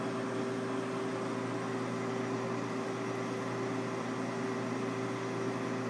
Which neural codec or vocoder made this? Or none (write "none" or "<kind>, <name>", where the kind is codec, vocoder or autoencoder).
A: none